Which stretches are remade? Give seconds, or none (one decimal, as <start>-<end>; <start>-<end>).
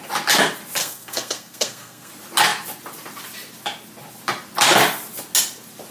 0.8-2.1